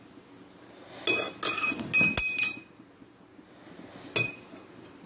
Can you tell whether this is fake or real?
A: real